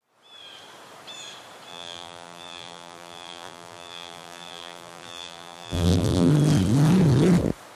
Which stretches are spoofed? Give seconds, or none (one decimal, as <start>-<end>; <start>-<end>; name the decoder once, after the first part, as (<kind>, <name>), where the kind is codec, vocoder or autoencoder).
1.7-6.3 (vocoder, BigVGAN v2)